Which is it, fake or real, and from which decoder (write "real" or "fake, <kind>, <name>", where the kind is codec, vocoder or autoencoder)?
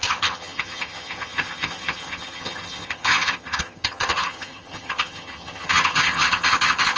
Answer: fake, vocoder, HiFi-GAN